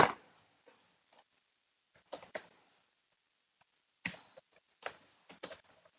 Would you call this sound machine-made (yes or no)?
no